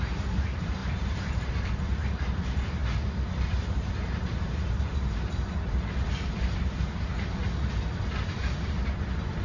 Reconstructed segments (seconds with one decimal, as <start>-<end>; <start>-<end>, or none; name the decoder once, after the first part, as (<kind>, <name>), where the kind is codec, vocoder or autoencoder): 0.0-7.1 (vocoder, BigVGAN v2); 8.0-9.4